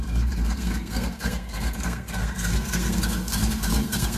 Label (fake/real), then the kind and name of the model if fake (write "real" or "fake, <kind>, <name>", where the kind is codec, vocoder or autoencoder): fake, codec, SNAC